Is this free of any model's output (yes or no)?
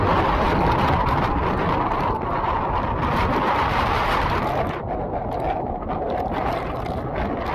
yes